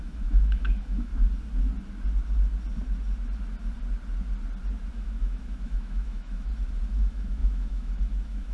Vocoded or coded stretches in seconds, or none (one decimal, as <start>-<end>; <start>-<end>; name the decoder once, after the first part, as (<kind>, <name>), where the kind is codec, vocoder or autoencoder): 0.0-1.1 (autoencoder, DAC-VAE); 4.9-6.5; 7.0-8.5